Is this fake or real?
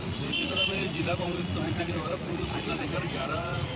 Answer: fake